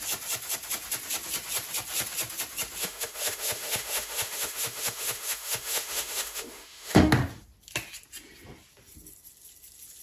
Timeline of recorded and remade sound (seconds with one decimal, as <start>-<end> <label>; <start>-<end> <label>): 0.0-2.8 recorded; 2.8-7.1 remade; 7.1-10.0 recorded